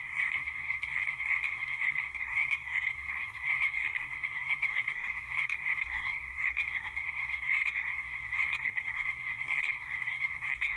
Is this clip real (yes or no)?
no